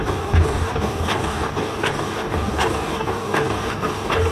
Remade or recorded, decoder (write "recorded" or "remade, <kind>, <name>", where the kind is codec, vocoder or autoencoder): remade, codec, DAC